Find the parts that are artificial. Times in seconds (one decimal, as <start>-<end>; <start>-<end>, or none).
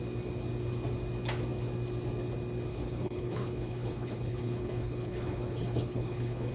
2.7-6.5